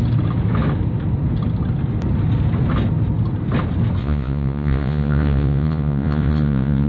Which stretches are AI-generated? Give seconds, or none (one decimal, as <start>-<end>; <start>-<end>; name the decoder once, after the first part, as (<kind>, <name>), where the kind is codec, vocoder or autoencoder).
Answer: 4.0-6.9 (vocoder, Vocos)